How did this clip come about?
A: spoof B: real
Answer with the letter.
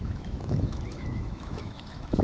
A